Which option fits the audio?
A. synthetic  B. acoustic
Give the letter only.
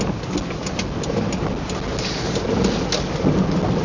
B